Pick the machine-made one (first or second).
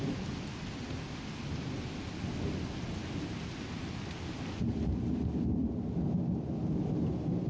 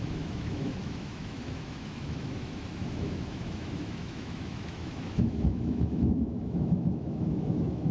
second